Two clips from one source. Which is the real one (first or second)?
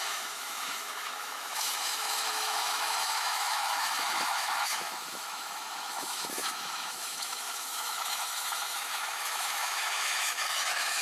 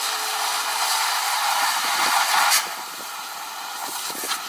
second